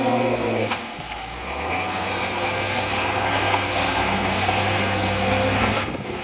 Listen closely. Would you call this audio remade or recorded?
remade